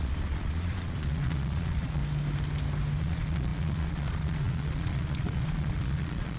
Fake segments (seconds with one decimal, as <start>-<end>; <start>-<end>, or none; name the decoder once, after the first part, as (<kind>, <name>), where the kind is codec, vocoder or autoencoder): 0.0-2.0 (vocoder, Vocos); 3.0-6.4